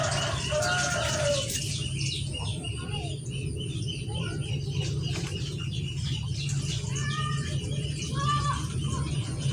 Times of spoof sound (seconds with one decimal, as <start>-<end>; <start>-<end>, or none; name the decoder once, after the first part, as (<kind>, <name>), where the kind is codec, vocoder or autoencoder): 2.5-5.4 (vocoder, BigVGAN v2)